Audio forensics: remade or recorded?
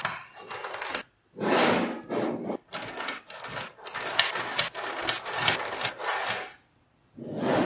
recorded